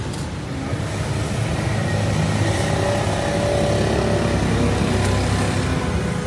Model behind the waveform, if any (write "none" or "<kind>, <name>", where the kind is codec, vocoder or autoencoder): none